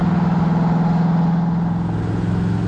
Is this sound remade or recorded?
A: recorded